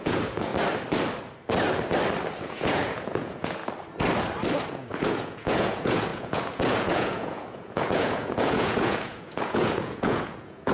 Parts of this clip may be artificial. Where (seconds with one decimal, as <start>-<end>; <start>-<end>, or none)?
0.0-0.5; 2.4-3.6; 4.7-10.7